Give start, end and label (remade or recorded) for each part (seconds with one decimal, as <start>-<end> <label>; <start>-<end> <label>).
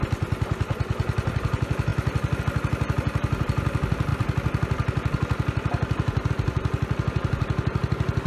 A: 0.0-8.3 recorded